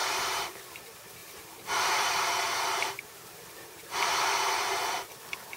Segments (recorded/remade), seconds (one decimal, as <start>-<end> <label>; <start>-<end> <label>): 0.0-0.6 remade; 0.6-1.2 recorded; 1.2-4.6 remade; 4.6-5.6 recorded